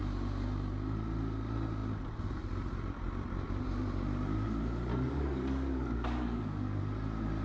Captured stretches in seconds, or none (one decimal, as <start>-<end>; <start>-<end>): 0.0-4.9; 6.8-7.4